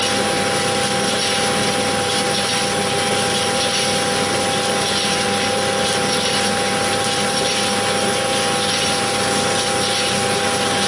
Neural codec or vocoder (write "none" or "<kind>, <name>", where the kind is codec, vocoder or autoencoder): none